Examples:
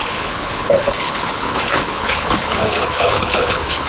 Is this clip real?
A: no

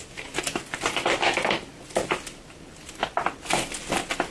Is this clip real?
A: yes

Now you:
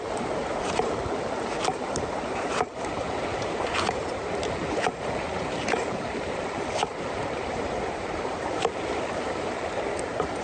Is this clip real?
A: no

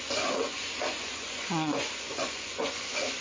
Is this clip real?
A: no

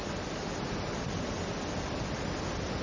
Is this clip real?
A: yes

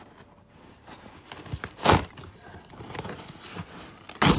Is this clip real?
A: yes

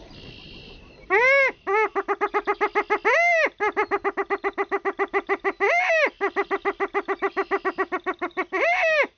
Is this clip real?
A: yes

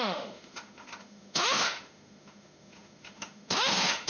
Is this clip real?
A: no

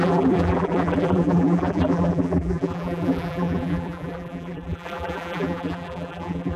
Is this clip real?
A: no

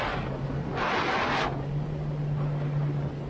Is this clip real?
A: yes